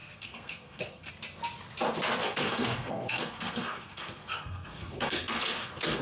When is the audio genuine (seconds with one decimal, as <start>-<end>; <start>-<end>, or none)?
1.1-2.2